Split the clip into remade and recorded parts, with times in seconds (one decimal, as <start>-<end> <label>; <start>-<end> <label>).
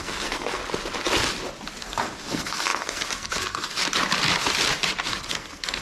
0.0-0.6 remade; 0.6-1.8 recorded; 1.8-3.8 remade; 3.8-5.3 recorded; 5.3-5.8 remade